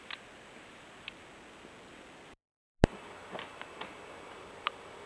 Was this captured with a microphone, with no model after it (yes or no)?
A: yes